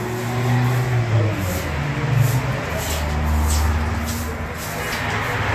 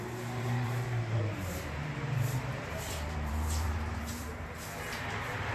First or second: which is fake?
second